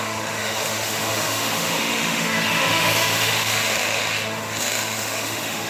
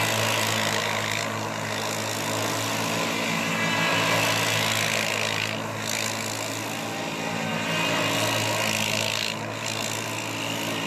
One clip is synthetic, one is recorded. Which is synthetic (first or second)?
first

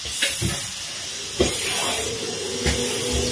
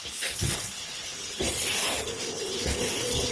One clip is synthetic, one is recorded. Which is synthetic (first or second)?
second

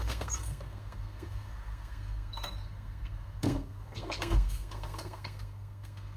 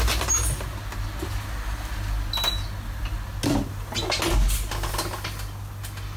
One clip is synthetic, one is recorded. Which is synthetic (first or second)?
first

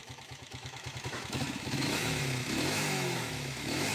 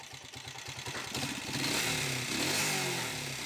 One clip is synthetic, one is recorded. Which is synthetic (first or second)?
first